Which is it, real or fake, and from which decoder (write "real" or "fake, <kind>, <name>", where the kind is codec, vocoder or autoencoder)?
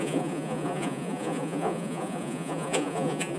fake, vocoder, Vocos